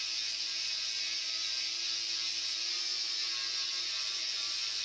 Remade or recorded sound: recorded